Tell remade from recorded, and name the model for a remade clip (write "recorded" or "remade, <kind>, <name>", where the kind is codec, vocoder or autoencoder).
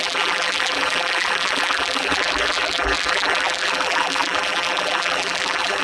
remade, vocoder, BigVGAN v2